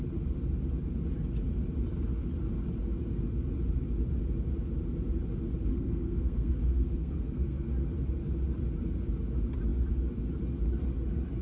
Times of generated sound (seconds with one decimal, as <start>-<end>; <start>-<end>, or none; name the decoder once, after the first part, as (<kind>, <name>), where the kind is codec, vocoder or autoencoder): 5.7-7.7 (codec, SNAC)